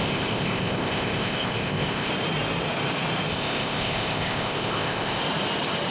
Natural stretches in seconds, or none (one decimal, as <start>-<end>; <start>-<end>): 2.1-3.3; 5.2-5.9